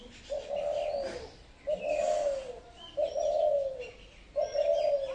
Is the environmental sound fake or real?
real